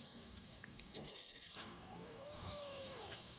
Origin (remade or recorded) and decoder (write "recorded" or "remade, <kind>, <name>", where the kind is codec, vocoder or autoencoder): remade, codec, DAC